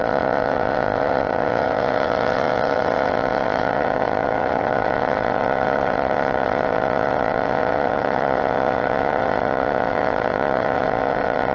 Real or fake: fake